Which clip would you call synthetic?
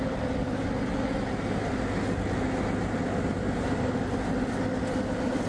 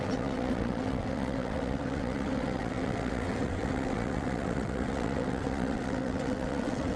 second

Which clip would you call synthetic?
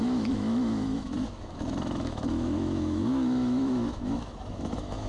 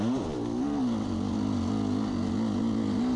first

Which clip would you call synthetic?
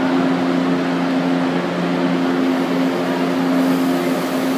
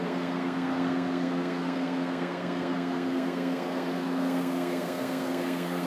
second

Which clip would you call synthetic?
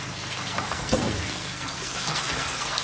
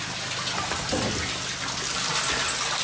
first